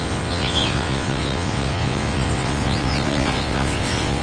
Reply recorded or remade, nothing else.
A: remade